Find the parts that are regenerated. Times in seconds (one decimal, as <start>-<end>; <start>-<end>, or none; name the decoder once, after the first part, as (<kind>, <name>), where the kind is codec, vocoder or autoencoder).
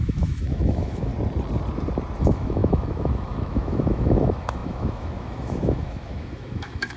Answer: 0.0-1.1 (autoencoder, DAC-VAE); 2.2-7.0